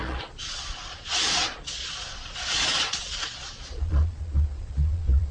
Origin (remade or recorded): remade